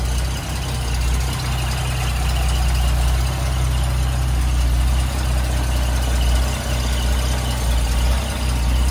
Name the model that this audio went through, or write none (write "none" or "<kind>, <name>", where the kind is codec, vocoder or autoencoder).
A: none